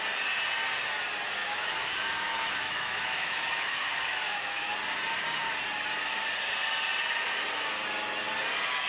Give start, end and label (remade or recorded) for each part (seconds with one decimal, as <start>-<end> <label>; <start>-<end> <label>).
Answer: 0.0-1.4 recorded; 1.4-4.7 remade; 4.7-8.9 recorded